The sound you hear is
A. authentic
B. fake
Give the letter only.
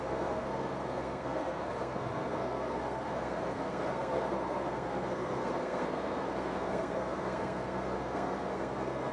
B